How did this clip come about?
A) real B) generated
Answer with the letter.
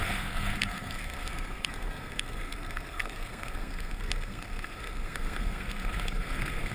B